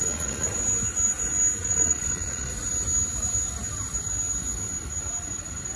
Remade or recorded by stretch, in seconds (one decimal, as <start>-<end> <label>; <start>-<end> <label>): 0.0-0.5 remade; 0.5-1.6 recorded; 1.6-2.5 remade; 2.5-5.8 recorded